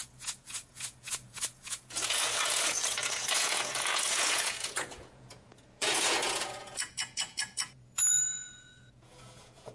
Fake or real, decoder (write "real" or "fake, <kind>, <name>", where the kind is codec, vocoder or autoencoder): fake, vocoder, Vocos